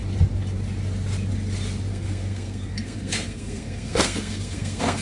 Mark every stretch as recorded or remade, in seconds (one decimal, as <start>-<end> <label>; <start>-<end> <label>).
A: 0.0-1.9 recorded; 1.9-5.0 remade